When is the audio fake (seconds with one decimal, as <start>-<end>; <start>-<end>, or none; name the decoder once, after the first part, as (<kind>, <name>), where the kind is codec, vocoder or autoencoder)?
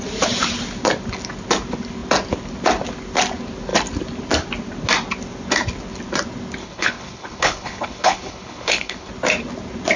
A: 6.6-9.1 (codec, HILCodec)